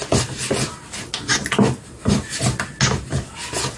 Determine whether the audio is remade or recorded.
recorded